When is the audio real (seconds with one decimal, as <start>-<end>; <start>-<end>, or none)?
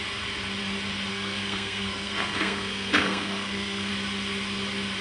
0.0-1.1; 3.9-5.0